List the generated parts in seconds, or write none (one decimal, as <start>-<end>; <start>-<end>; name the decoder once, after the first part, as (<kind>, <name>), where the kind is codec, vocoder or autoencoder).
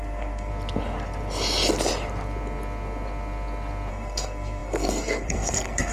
0.0-0.5 (codec, SNAC); 3.9-5.9